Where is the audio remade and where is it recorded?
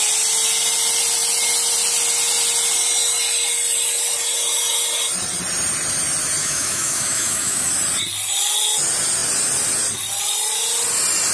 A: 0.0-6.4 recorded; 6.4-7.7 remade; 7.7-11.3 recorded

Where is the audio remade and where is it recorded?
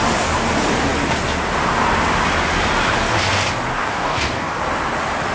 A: 0.0-3.7 recorded; 3.7-4.6 remade; 4.6-5.3 recorded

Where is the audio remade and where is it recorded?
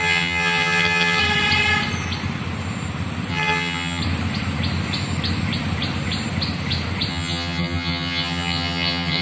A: 0.0-1.2 remade; 1.2-3.3 recorded; 3.3-4.0 remade; 4.0-7.1 recorded; 7.1-9.2 remade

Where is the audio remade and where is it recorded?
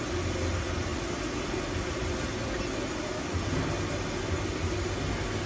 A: 0.0-5.5 recorded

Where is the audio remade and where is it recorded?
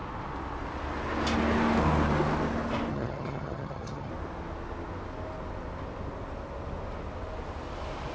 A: 0.0-2.9 recorded; 2.9-4.1 remade; 4.1-8.1 recorded